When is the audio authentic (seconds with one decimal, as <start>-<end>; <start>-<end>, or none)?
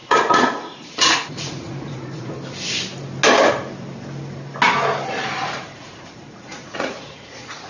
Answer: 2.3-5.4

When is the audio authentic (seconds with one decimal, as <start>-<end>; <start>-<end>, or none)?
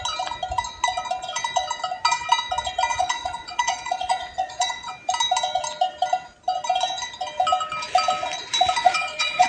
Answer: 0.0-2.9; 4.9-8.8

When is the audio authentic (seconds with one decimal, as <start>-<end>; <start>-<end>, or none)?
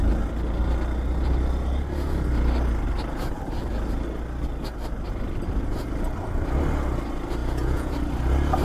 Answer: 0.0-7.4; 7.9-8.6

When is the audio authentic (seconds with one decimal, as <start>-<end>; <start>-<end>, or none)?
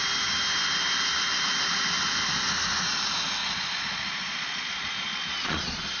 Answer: 0.0-3.4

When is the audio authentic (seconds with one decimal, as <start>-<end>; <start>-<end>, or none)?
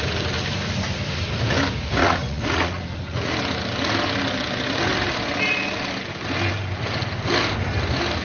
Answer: 0.0-2.0; 3.3-8.2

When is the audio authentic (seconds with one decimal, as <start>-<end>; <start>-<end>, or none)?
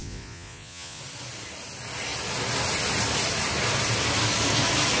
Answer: 1.0-5.0